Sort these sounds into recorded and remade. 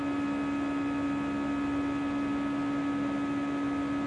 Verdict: recorded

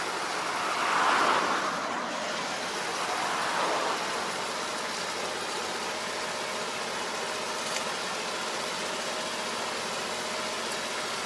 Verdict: recorded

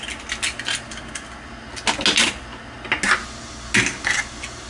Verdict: recorded